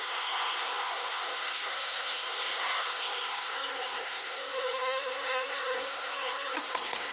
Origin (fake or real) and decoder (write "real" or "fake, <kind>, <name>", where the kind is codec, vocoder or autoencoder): fake, codec, SNAC